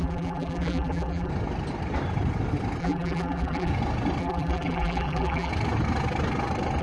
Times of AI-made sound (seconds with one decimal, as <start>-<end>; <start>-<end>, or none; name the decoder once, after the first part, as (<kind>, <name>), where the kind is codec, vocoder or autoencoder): 0.0-1.3 (vocoder, BigVGAN v2); 2.8-3.7; 4.2-5.5

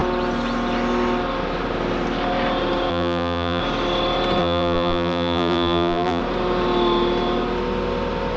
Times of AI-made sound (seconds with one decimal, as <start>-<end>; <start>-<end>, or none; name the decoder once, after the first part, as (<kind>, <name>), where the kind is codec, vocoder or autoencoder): 2.9-3.6 (vocoder, BigVGAN v2); 4.4-6.2